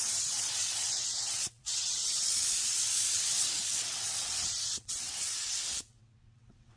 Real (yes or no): no